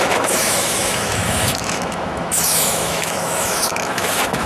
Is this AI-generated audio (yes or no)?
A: yes